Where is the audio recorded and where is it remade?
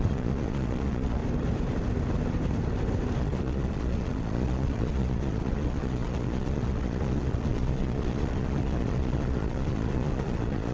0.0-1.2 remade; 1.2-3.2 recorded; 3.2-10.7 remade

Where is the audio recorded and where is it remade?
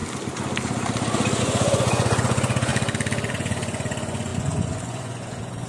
0.0-1.4 recorded; 1.4-2.7 remade; 2.7-3.3 recorded; 3.3-5.7 remade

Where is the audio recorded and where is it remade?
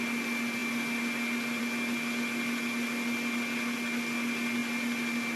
0.0-5.4 recorded